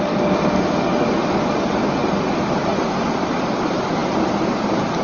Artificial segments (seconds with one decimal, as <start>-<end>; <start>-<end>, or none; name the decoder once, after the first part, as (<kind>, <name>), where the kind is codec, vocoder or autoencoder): 2.0-3.1 (vocoder, BigVGAN v2)